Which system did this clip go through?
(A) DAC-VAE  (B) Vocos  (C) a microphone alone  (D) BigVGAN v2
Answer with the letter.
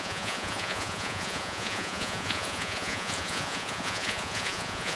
B